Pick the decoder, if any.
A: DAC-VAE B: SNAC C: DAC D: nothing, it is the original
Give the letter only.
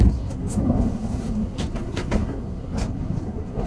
B